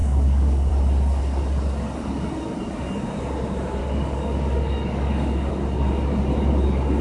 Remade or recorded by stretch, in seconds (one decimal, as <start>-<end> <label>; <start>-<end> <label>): 0.0-0.7 remade; 0.7-3.8 recorded; 3.8-5.5 remade; 5.5-7.0 recorded